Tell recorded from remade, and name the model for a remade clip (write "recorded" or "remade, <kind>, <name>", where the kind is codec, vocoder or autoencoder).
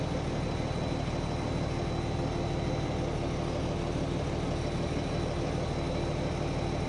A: recorded